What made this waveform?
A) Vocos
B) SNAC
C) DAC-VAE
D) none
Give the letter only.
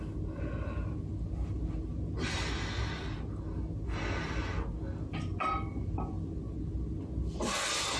D